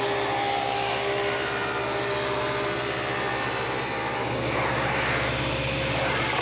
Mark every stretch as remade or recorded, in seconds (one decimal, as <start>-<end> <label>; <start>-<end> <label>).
0.0-6.4 recorded